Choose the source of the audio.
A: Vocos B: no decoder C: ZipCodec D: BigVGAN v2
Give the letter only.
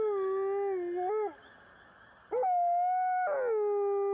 B